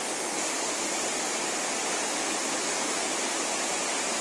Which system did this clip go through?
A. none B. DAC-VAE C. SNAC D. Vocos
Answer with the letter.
A